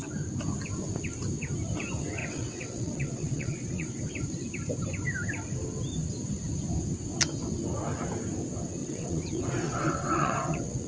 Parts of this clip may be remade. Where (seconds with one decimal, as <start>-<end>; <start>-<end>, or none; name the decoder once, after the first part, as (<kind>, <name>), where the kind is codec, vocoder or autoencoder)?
2.2-4.0 (vocoder, WaveNeXt); 8.8-10.9